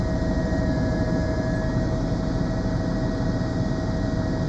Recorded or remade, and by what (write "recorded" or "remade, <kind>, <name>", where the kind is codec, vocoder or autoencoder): recorded